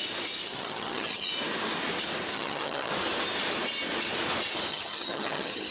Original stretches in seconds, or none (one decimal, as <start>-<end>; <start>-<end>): 0.0-0.4; 1.3-2.3; 2.9-4.7